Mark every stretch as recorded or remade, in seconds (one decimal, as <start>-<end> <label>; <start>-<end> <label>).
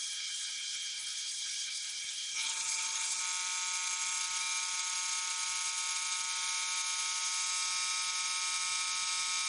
0.0-3.2 remade; 3.2-9.5 recorded